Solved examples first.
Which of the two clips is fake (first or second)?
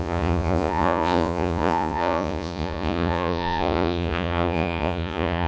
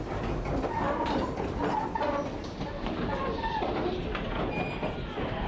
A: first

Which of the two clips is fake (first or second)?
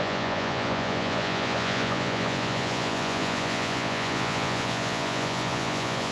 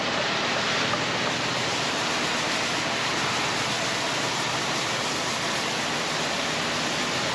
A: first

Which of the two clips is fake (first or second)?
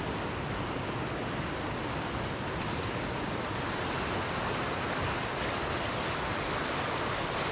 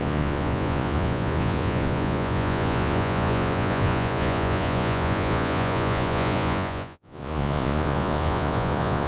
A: second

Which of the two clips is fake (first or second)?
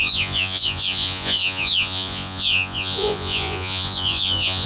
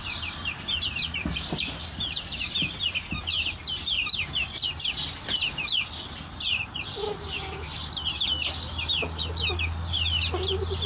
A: first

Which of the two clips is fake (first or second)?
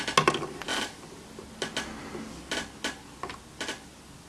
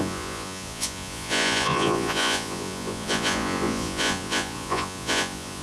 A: second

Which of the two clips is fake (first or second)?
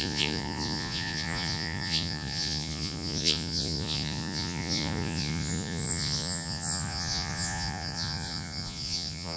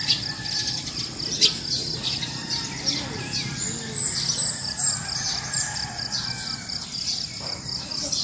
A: first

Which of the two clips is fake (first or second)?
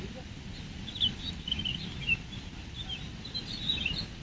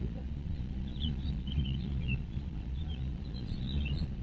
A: second